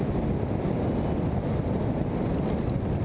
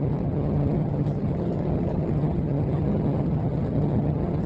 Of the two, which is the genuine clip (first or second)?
first